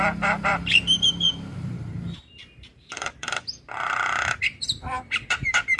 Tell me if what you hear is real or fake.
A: fake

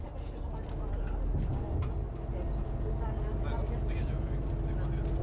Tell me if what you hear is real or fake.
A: real